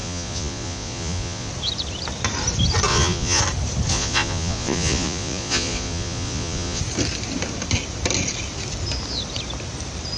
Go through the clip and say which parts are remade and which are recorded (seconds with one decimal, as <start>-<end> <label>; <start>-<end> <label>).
0.0-1.5 remade; 1.5-2.9 recorded; 2.9-3.4 remade; 3.4-3.9 recorded; 3.9-6.8 remade; 6.8-10.2 recorded